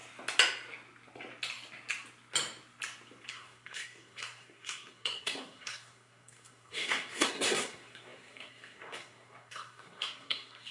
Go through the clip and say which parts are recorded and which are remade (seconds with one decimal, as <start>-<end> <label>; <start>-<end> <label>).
0.0-3.3 recorded; 3.3-10.7 remade